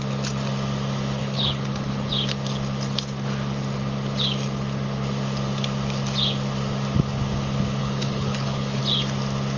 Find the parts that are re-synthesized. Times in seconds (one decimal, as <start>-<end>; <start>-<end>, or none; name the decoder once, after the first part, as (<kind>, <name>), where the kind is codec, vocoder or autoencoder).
1.2-2.1 (codec, HILCodec); 7.8-8.8